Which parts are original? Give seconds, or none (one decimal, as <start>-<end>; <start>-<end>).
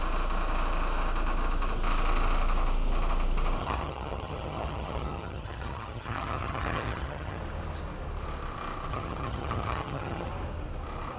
0.0-3.6; 7.4-8.9; 10.3-11.2